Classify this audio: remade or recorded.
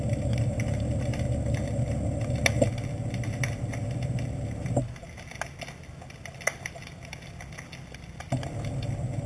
recorded